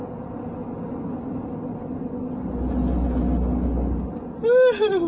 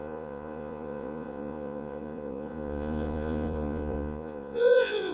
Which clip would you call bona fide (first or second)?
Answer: first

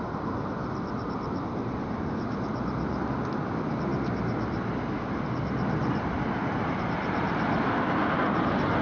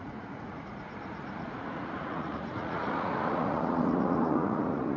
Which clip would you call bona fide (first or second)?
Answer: first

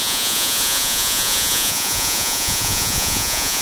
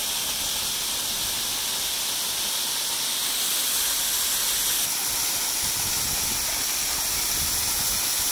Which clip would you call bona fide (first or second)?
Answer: second